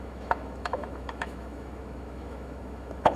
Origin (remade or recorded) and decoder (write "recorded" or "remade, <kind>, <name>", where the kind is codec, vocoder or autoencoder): remade, autoencoder, DAC-VAE